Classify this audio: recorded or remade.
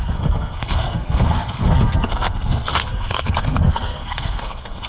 remade